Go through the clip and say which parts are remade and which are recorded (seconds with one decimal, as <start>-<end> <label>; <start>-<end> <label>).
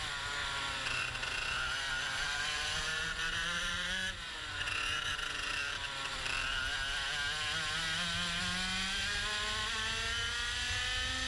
0.0-0.4 recorded; 0.4-5.5 remade; 5.5-11.3 recorded